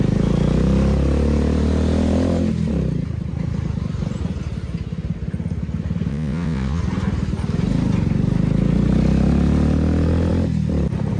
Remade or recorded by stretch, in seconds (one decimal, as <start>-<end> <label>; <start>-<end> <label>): 0.0-6.1 recorded; 6.1-6.8 remade; 6.8-11.2 recorded